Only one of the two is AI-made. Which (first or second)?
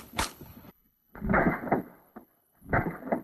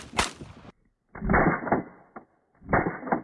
first